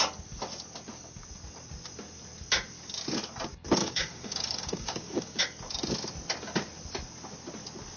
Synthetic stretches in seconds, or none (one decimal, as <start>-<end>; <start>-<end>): 3.8-5.4